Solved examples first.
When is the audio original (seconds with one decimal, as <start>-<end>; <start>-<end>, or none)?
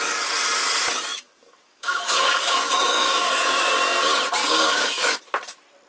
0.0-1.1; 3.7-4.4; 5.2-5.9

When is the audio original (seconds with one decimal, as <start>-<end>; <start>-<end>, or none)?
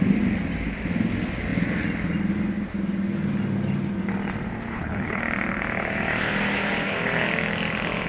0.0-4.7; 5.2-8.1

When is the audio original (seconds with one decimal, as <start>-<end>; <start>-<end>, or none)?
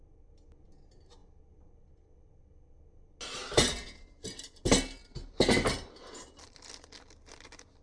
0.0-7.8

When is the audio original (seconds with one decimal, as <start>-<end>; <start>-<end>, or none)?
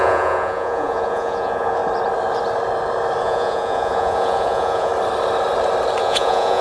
1.8-3.2; 4.9-6.0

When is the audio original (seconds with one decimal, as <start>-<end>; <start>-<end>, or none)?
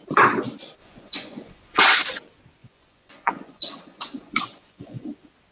0.0-0.8; 1.8-2.6; 5.1-5.5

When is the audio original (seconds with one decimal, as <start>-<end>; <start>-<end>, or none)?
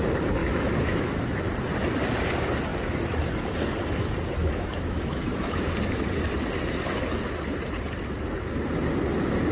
0.0-0.4; 1.5-4.4; 5.6-9.5